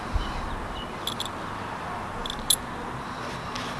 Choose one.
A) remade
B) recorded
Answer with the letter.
B